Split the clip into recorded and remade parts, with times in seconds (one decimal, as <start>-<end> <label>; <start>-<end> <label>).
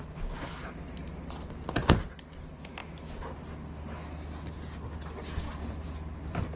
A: 0.0-6.6 recorded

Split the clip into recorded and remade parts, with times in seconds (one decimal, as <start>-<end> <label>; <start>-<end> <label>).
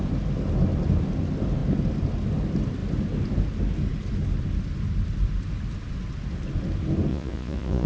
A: 0.0-7.1 recorded; 7.1-7.9 remade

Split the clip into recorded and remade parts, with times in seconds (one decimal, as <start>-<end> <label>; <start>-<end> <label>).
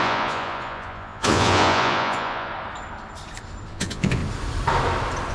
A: 0.0-2.5 remade; 2.5-3.7 recorded; 3.7-4.2 remade; 4.2-5.3 recorded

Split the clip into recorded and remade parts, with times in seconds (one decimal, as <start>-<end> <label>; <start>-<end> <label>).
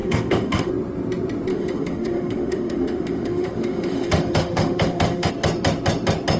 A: 0.0-0.7 remade; 0.7-1.5 recorded; 1.5-5.3 remade; 5.3-6.4 recorded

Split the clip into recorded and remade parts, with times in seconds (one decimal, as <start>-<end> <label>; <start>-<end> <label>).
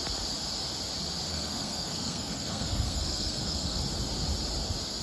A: 0.0-1.3 recorded; 1.3-3.8 remade; 3.8-5.0 recorded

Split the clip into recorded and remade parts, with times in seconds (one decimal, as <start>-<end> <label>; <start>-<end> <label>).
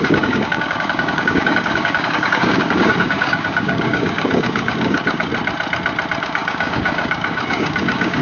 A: 0.0-5.3 remade; 5.3-6.2 recorded; 6.2-8.2 remade